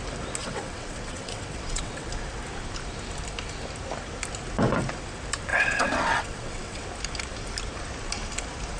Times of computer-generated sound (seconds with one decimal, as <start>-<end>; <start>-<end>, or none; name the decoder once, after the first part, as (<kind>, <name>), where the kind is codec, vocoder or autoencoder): 0.4-2.1 (vocoder, WaveNeXt); 5.5-6.8